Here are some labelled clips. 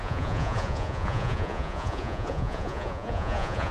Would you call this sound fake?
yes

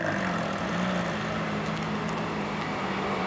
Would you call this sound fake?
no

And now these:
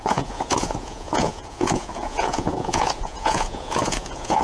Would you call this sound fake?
yes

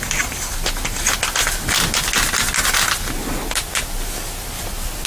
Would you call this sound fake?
no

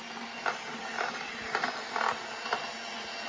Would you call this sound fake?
no